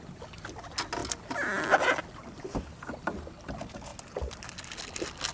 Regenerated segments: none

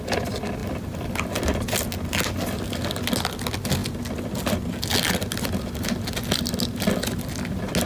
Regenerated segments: none

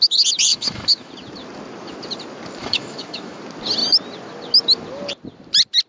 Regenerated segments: 0.5-1.1; 2.6-3.4